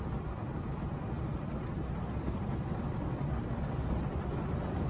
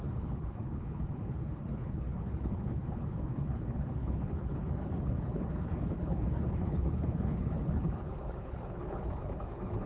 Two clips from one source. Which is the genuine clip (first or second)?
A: first